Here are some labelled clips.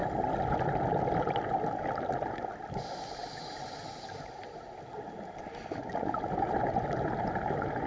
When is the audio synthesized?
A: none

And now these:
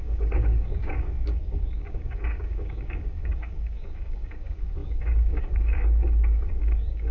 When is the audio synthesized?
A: 0.0-7.1 (codec, DAC)

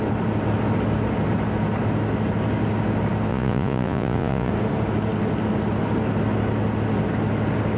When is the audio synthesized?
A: 3.3-4.5 (vocoder, Vocos)

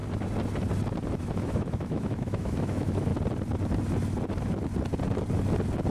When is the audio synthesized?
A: 1.2-3.1 (autoencoder, DAC-VAE)

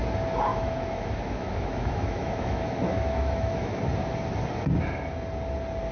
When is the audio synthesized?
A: 0.5-3.8 (autoencoder, DAC-VAE)

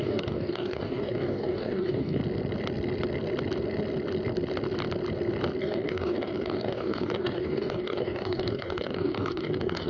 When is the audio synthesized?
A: 0.0-2.2 (codec, DAC); 5.6-9.9